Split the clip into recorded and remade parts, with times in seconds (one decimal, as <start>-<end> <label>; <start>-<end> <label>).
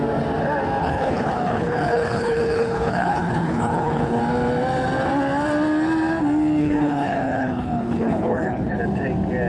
0.0-0.8 recorded; 0.8-4.2 remade; 4.2-6.6 recorded; 6.6-8.8 remade; 8.8-9.5 recorded